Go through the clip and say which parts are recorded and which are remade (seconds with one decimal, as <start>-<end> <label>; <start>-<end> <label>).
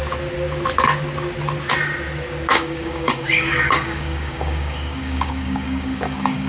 0.0-2.5 recorded; 2.5-6.5 remade